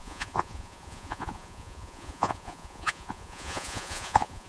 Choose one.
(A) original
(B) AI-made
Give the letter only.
B